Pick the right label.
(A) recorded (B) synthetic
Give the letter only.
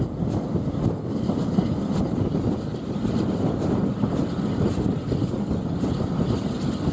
A